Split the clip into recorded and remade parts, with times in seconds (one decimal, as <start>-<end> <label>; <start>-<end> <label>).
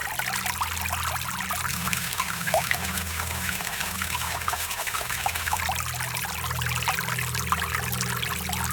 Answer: 0.0-1.7 recorded; 1.7-5.6 remade; 5.6-8.7 recorded